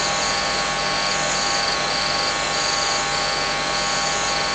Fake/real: real